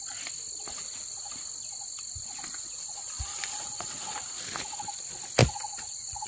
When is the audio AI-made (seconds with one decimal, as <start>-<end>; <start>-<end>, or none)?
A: 0.8-1.4; 2.5-4.4; 5.4-6.3